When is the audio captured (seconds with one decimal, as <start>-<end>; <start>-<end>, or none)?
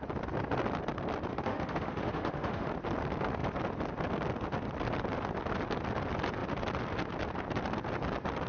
0.0-1.3; 2.7-8.5